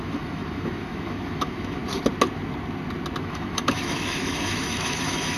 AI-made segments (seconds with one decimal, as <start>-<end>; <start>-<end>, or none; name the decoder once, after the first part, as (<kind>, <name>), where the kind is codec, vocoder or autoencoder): 0.0-1.8 (autoencoder, DAC-VAE); 3.2-5.4